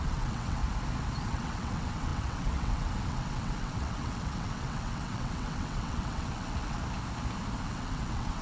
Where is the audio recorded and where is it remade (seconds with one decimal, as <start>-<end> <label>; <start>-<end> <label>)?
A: 0.0-0.6 remade; 0.6-1.2 recorded; 1.2-6.8 remade; 6.8-7.6 recorded; 7.6-8.4 remade